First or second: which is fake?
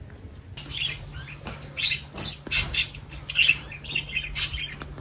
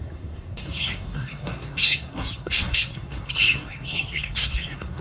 second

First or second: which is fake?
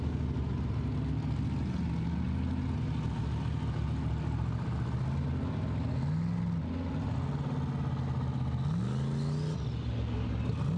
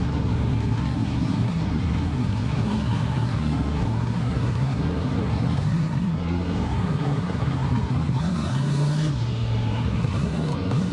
second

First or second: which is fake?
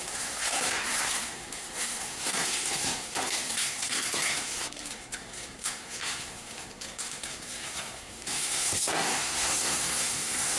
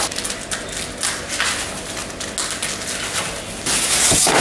first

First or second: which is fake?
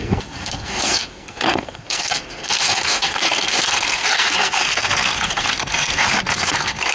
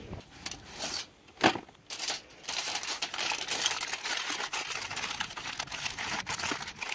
first